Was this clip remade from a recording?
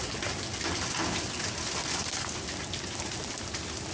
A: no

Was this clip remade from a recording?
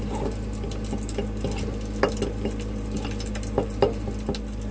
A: no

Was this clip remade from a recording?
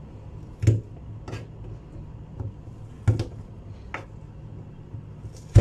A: no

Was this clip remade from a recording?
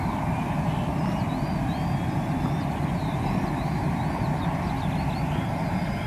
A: no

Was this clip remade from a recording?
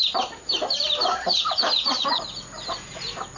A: yes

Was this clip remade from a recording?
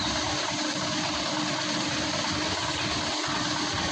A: no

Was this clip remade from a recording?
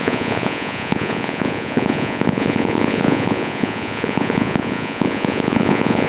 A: yes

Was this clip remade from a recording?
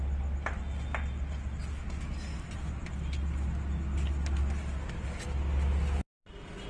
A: no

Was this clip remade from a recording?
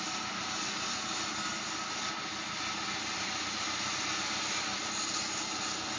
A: no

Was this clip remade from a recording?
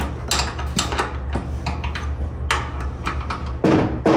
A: no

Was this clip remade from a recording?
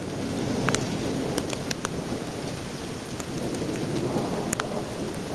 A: no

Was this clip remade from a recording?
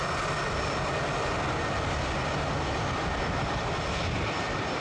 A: no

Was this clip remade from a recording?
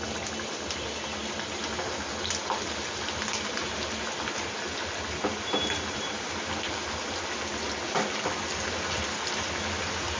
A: no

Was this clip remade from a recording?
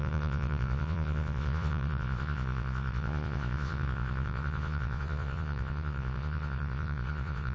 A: yes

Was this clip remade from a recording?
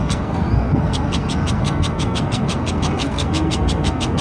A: yes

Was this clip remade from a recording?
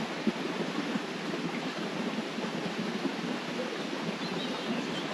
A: no